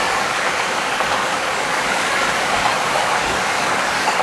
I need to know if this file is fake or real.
fake